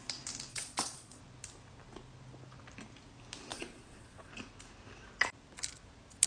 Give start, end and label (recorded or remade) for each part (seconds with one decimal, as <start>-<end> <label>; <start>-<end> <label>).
0.0-0.5 recorded; 0.5-1.2 remade; 1.2-3.5 recorded; 3.5-4.3 remade; 4.3-6.3 recorded